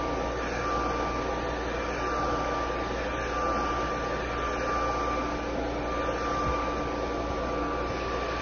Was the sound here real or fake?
real